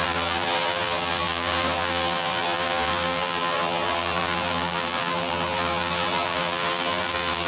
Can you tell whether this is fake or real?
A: fake